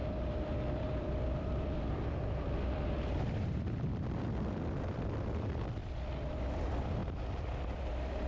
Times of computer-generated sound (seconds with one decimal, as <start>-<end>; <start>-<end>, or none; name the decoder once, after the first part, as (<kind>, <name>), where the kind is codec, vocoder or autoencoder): 0.0-7.0 (vocoder, BigVGAN v2); 7.8-8.3